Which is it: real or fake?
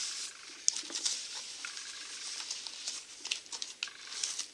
real